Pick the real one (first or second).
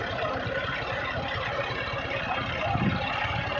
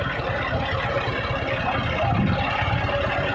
second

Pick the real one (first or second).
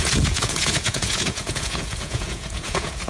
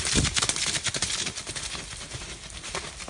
second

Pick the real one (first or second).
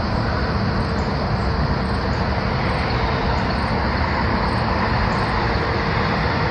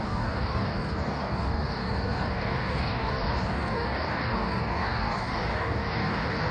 first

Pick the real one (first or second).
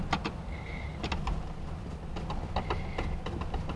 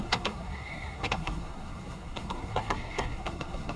first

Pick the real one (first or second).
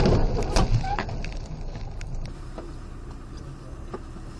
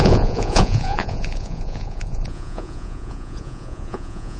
first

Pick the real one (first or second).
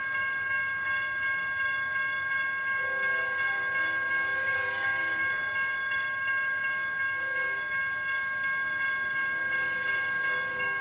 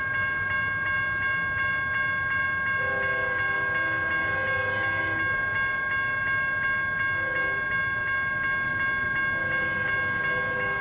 second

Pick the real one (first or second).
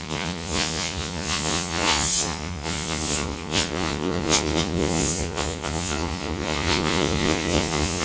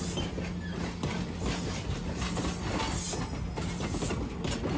second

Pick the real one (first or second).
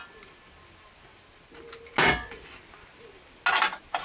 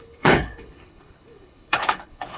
first